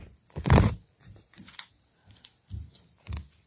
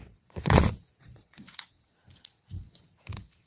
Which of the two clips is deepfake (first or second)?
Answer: second